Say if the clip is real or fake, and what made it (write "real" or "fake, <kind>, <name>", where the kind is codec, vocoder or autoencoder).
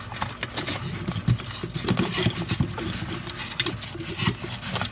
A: real